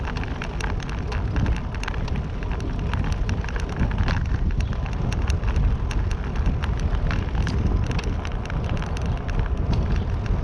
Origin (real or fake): real